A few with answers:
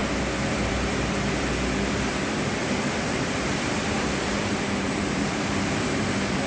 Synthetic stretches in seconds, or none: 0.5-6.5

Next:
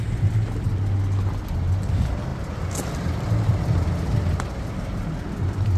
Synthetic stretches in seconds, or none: none

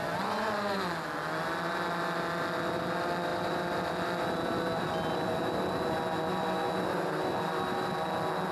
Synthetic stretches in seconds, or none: 3.3-3.9

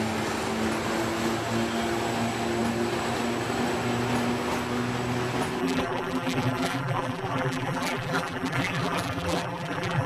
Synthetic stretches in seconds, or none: 5.6-10.1

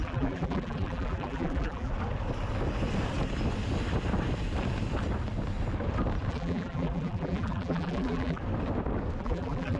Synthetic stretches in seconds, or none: 0.0-1.9; 6.3-8.4; 9.2-9.8

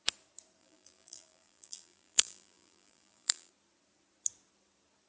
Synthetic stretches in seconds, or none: 0.6-3.5

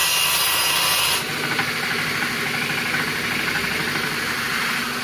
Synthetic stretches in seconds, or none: none

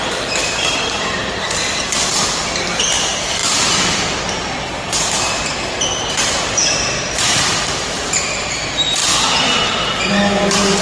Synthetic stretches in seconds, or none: 0.0-9.0